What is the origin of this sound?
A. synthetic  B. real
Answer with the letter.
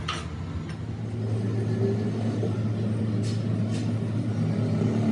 B